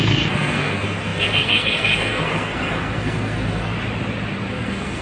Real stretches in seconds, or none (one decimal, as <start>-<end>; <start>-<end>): 3.7-4.5